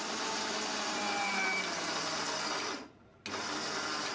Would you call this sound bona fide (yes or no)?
yes